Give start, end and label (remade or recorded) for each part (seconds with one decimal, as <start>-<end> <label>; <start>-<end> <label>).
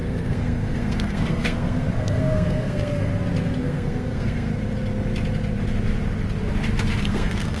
0.0-3.1 remade; 3.1-3.6 recorded; 3.6-4.5 remade; 4.5-7.0 recorded; 7.0-7.6 remade